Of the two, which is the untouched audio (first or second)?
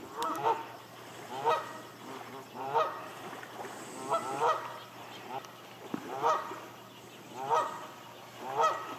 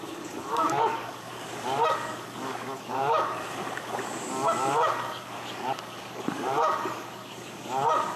first